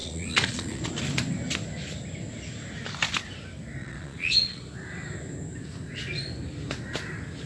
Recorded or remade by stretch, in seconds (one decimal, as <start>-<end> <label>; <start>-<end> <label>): 0.0-0.8 remade; 0.8-3.8 recorded; 3.8-4.6 remade; 4.6-7.5 recorded

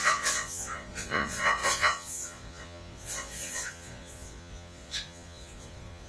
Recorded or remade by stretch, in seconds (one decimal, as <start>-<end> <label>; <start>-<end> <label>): 0.0-6.1 remade

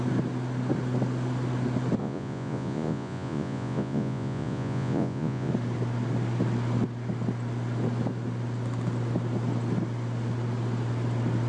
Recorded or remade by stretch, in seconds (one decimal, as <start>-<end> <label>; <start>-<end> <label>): 0.0-2.0 recorded; 2.0-5.5 remade; 5.5-11.5 recorded

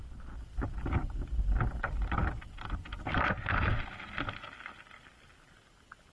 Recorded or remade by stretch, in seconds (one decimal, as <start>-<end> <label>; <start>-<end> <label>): 0.0-6.1 recorded

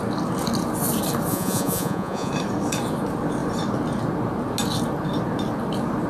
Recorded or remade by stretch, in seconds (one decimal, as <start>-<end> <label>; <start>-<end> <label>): 0.0-1.3 recorded; 1.3-2.3 remade; 2.3-6.1 recorded

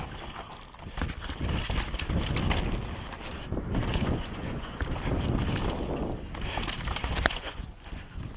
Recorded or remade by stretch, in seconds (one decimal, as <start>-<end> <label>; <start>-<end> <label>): 0.0-3.9 recorded; 3.9-4.8 remade; 4.8-7.0 recorded; 7.0-8.4 remade